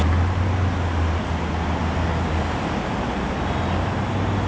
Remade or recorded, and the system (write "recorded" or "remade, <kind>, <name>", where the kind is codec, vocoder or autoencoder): recorded